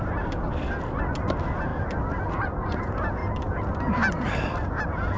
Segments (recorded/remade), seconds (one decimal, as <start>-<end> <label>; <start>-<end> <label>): 0.0-5.2 recorded